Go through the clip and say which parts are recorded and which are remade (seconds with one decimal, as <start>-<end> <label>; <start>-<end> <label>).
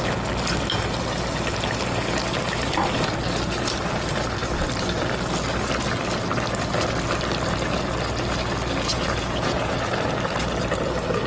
0.0-8.9 recorded; 8.9-9.7 remade; 9.7-11.3 recorded